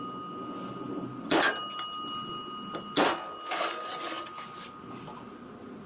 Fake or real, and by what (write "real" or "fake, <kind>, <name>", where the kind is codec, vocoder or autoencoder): real